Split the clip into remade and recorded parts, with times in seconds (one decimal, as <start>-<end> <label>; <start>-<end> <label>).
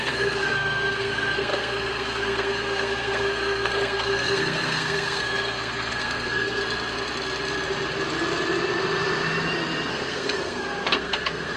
0.0-6.6 remade; 6.6-9.9 recorded; 9.9-11.6 remade